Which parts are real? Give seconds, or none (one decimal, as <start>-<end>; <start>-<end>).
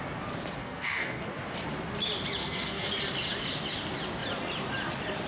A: 0.0-0.6; 1.3-2.4; 2.9-5.3